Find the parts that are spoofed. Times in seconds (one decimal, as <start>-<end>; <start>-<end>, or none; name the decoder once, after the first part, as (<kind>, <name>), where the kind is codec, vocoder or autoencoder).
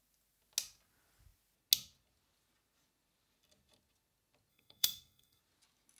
4.5-5.4 (codec, SNAC)